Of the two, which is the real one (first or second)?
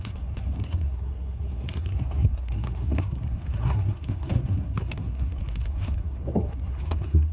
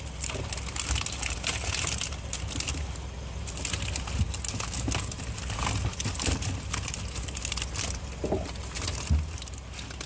second